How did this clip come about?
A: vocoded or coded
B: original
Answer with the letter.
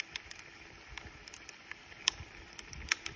A